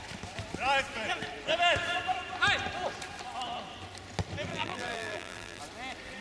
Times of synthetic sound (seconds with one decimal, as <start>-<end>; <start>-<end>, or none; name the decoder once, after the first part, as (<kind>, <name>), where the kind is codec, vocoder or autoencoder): 4.5-5.6 (vocoder, BigVGAN v2)